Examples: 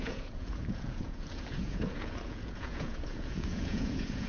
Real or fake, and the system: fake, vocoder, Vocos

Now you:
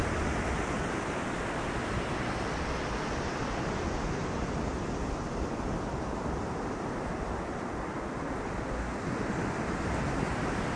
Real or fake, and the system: real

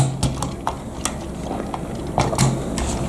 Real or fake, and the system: real